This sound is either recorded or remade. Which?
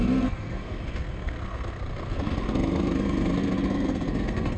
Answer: remade